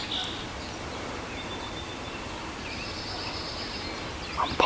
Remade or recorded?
recorded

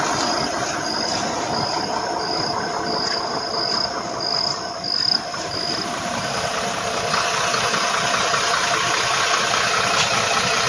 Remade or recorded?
recorded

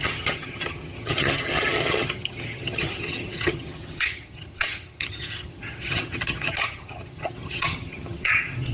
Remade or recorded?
remade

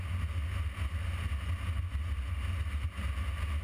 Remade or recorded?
recorded